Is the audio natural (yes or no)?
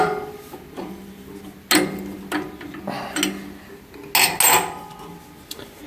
yes